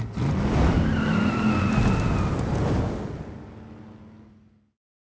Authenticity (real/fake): real